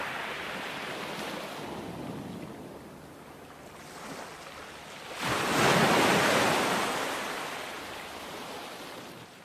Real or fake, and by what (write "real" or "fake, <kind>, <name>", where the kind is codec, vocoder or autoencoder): real